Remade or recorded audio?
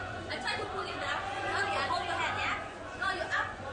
remade